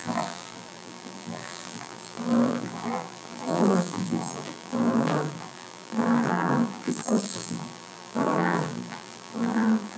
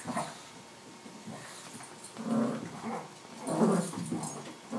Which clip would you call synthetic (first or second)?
first